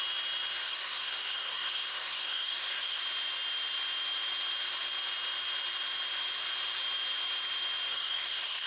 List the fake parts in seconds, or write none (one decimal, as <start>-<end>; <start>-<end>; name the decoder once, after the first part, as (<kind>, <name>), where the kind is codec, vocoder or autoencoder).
0.6-3.0 (codec, SNAC); 7.9-8.7